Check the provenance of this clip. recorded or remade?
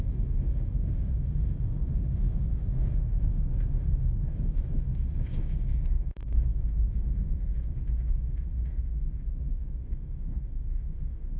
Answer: remade